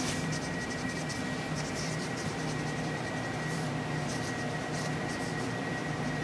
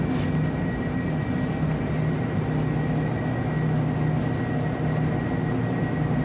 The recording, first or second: second